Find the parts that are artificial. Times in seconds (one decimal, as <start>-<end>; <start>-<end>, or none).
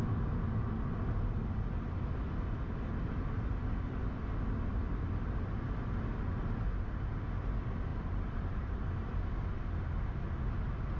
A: 7.9-8.8